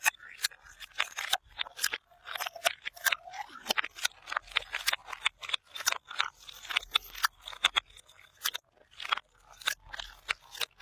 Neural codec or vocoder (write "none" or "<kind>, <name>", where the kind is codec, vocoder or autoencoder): none